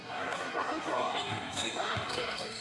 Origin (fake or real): fake